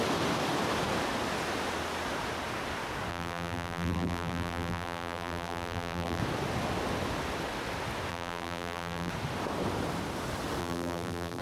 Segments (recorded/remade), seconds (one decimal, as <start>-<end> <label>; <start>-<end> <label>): 0.0-3.1 recorded; 3.1-6.2 remade; 6.2-8.1 recorded; 8.1-9.1 remade; 9.1-10.6 recorded; 10.6-11.4 remade